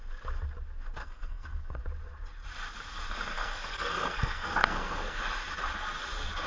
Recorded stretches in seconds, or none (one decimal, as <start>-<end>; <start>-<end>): 0.0-1.0; 1.8-3.3; 5.2-6.5